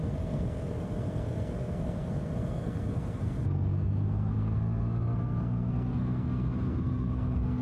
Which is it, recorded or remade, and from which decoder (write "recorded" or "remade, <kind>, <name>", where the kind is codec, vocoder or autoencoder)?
remade, codec, SNAC